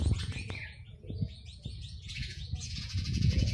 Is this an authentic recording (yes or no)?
no